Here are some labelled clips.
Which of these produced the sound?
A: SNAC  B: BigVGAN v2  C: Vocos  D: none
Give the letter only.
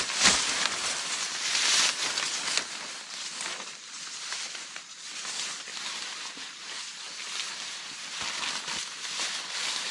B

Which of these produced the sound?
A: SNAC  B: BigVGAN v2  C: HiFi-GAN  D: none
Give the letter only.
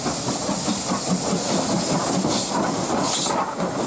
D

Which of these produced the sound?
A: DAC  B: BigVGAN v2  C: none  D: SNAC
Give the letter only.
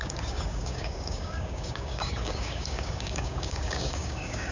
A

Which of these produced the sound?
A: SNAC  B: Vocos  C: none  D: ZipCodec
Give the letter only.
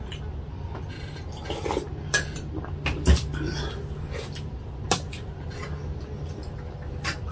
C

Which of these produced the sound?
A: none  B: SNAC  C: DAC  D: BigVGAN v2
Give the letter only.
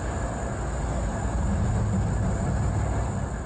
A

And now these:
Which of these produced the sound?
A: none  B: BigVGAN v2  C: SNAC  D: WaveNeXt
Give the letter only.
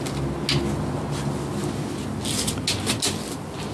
A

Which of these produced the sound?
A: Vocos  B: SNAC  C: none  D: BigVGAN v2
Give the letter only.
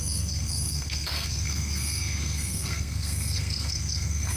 B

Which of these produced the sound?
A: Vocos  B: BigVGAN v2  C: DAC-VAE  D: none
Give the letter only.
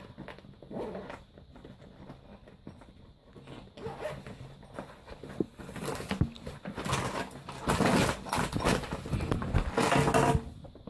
D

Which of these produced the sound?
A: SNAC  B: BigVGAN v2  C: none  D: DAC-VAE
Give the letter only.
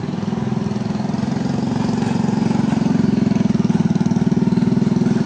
C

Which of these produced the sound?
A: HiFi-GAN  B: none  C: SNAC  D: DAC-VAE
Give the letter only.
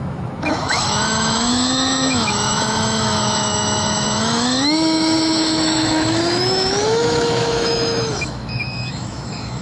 D